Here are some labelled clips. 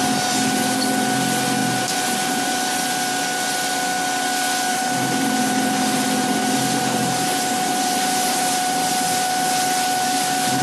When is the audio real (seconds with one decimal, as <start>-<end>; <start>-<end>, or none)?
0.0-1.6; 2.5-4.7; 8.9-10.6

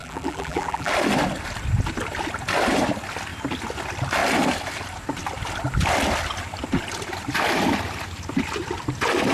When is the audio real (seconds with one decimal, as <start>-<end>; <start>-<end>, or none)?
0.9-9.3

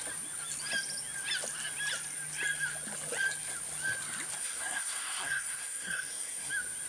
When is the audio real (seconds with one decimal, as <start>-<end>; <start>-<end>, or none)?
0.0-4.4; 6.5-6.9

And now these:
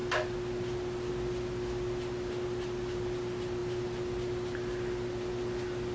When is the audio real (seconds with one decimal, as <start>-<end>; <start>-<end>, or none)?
0.0-5.9